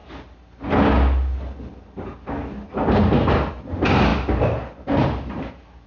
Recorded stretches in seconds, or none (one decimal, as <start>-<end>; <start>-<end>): 0.0-5.9